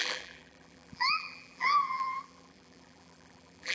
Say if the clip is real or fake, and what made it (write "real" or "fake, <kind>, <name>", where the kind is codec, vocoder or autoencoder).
fake, vocoder, BigVGAN v2